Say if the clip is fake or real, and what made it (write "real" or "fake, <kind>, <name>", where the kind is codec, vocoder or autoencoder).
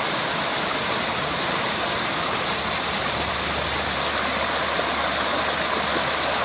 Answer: real